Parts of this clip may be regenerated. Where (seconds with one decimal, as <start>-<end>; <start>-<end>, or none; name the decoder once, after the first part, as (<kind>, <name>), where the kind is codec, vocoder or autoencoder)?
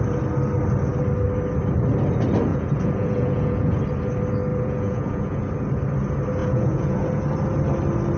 2.5-3.8 (vocoder, Vocos); 4.5-5.4; 6.4-7.2